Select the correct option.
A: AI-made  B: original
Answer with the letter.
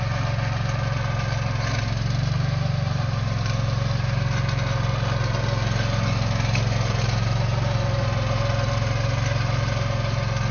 B